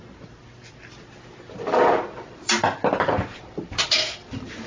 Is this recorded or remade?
recorded